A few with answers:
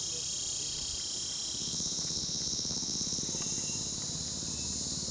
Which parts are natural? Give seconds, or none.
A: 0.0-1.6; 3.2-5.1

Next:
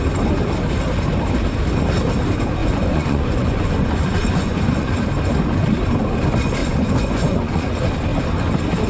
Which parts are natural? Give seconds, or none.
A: 0.0-2.6; 4.9-6.6; 7.7-8.9

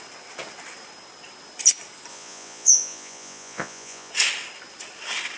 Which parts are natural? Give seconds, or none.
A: 0.0-2.1; 4.1-5.4